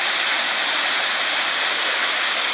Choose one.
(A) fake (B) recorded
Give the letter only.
B